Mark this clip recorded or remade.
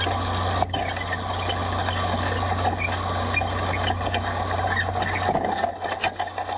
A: recorded